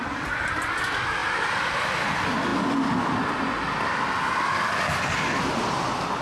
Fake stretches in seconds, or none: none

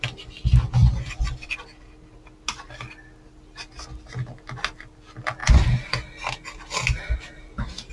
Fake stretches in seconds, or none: none

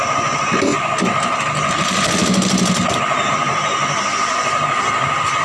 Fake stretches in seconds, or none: 0.0-0.7 (vocoder, BigVGAN v2); 3.3-3.8

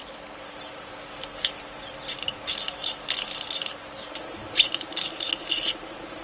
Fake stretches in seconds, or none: none

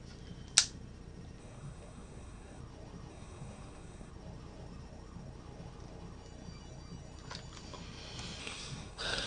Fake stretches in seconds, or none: 1.4-2.6 (codec, SNAC); 3.1-4.1; 8.4-9.3

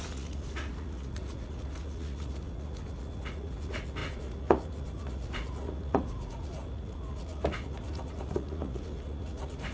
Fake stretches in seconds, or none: 0.0-9.7 (vocoder, Vocos)